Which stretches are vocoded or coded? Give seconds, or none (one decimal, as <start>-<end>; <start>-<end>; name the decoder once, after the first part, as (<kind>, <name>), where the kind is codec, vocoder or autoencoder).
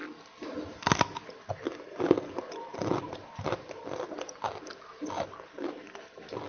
none